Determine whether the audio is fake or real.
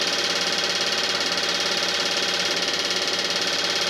real